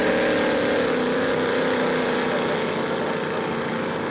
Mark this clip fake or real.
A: real